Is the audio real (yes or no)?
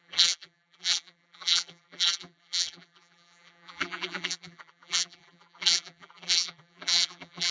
no